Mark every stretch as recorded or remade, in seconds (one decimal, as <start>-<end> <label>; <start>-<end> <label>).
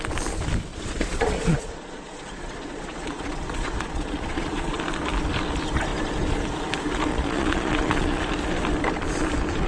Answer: 0.0-0.7 recorded; 0.7-4.8 remade; 4.8-7.1 recorded; 7.1-8.2 remade; 8.2-9.7 recorded